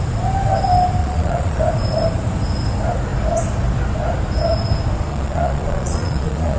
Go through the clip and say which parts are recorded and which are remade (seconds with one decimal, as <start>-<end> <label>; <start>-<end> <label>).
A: 0.0-1.0 recorded; 1.0-1.6 remade; 1.6-5.1 recorded; 5.1-6.6 remade